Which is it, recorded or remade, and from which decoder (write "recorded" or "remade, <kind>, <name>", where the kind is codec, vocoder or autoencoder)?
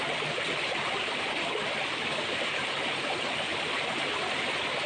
recorded